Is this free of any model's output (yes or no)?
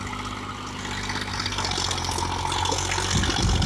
yes